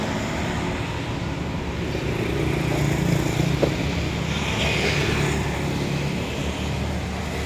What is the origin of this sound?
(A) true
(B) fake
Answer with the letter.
A